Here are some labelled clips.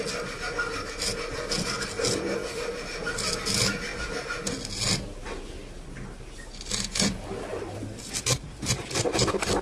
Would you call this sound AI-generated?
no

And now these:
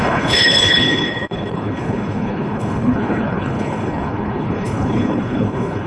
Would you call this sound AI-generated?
yes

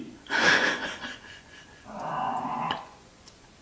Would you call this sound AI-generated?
yes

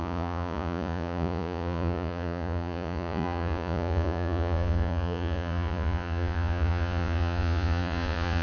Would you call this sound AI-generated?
yes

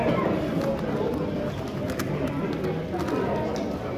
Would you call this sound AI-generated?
no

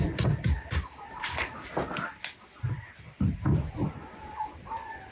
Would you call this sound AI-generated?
no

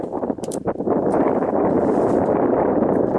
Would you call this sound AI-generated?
yes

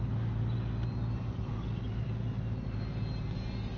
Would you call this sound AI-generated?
no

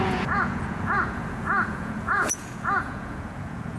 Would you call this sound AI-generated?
yes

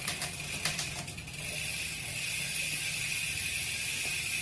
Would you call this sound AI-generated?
no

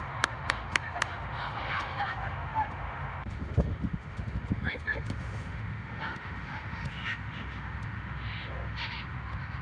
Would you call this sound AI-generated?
yes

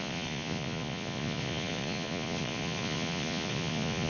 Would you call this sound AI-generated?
yes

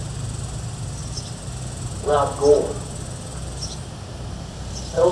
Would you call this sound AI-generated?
no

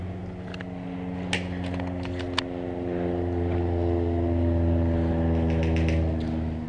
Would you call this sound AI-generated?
no